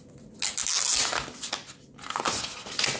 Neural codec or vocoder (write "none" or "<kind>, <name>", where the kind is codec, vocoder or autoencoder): none